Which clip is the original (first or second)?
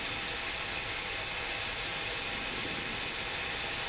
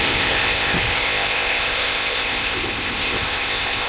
first